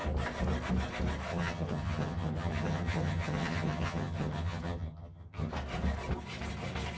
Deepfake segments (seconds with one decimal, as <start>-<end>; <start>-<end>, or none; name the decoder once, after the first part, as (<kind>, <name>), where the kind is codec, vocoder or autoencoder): 1.3-5.5 (vocoder, HiFi-GAN)